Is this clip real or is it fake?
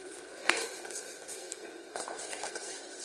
fake